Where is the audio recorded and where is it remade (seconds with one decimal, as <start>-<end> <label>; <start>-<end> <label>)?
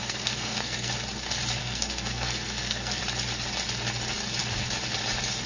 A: 0.0-0.9 remade; 0.9-1.6 recorded; 1.6-3.0 remade; 3.0-5.5 recorded